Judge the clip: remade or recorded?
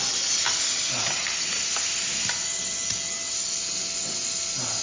recorded